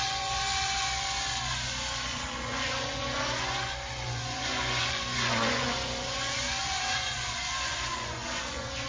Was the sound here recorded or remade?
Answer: remade